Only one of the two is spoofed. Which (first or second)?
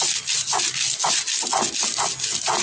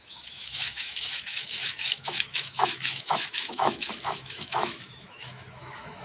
second